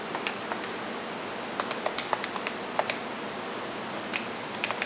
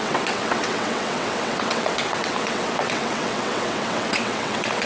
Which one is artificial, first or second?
second